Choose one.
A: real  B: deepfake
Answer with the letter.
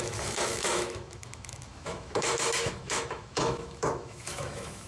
B